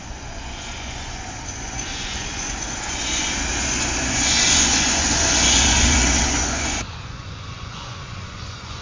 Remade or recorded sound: remade